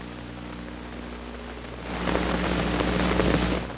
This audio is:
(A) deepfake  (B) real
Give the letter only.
B